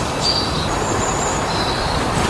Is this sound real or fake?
fake